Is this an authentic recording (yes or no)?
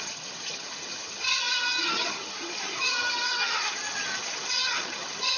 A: no